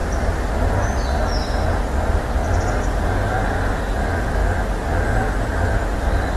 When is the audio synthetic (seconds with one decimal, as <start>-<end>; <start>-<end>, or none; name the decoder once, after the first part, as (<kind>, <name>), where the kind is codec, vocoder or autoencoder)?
none